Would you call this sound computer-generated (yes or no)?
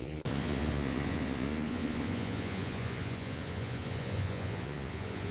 yes